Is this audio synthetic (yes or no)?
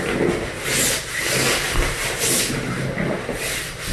no